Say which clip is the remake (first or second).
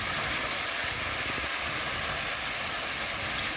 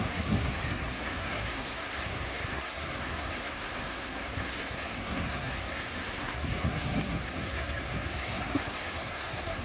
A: second